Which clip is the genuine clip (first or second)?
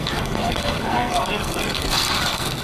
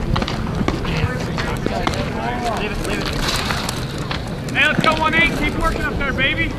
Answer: second